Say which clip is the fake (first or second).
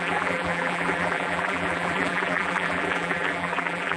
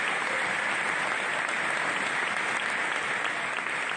first